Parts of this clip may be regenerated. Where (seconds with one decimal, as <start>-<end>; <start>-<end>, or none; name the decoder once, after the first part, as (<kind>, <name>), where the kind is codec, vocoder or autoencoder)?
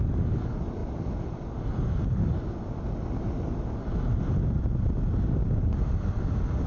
none